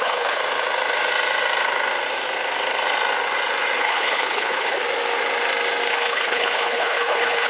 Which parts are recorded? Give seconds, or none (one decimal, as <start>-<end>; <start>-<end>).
0.4-3.8; 4.8-5.9